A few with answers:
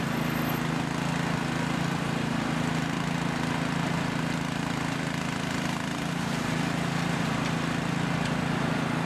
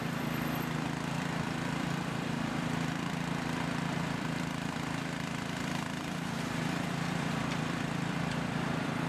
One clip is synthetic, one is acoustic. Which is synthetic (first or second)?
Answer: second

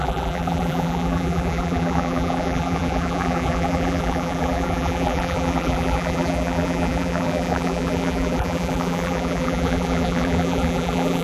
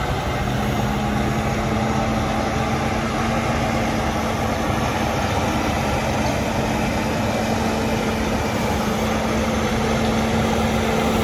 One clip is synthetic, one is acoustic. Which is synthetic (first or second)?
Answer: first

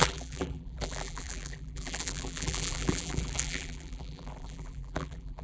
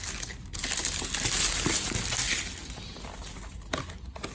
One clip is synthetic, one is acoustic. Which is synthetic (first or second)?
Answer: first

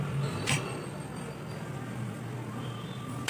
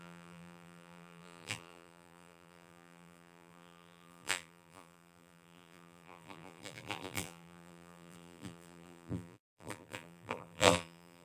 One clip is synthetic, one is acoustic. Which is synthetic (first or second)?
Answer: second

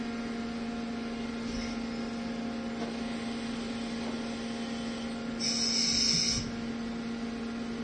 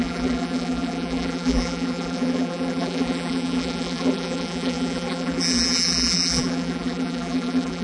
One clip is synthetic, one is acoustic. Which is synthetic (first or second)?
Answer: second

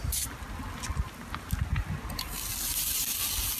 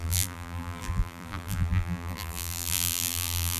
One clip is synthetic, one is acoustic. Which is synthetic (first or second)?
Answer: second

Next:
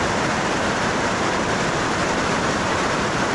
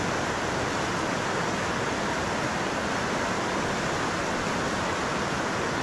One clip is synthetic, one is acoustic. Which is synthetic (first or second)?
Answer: first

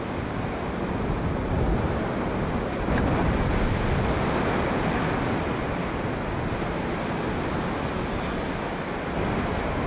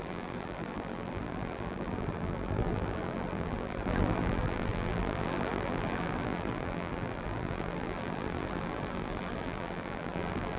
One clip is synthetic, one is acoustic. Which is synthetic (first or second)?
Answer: second